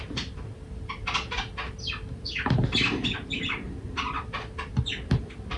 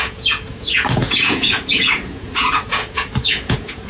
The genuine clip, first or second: first